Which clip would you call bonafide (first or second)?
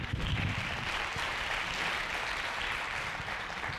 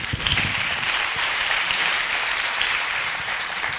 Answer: first